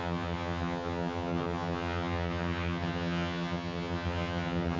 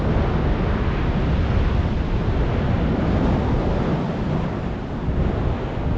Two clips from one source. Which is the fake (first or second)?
first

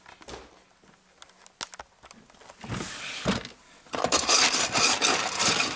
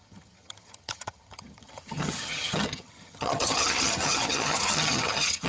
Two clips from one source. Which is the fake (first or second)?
second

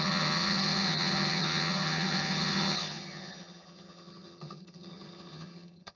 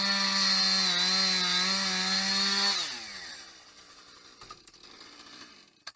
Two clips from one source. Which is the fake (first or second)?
first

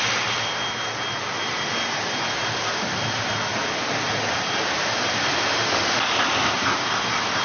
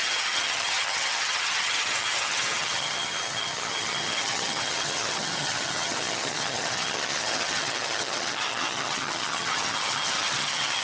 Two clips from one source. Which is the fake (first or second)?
second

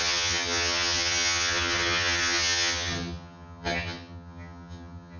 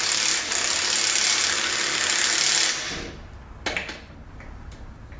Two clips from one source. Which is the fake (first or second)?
first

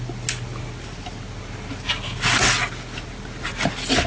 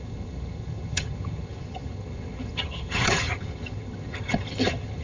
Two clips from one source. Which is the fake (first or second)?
second